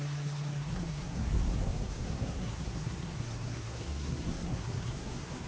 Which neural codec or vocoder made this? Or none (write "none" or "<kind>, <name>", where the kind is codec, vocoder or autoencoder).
codec, SNAC